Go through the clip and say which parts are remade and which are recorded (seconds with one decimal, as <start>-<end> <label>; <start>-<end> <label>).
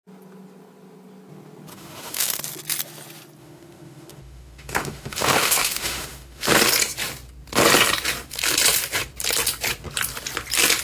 0.0-1.7 recorded; 1.7-2.4 remade; 2.4-3.4 recorded; 3.4-6.5 remade; 6.5-10.8 recorded